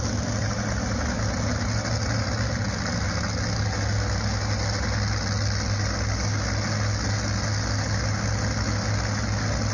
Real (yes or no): yes